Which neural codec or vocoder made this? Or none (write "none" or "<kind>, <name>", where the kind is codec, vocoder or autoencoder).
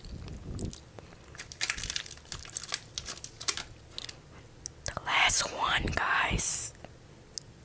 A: none